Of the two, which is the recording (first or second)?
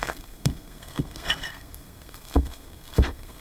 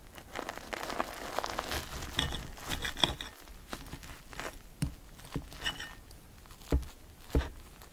second